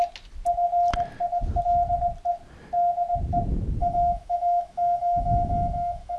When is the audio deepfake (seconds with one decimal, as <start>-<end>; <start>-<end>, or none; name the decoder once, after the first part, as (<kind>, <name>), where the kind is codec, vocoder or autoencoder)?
3.8-6.2 (autoencoder, DAC-VAE)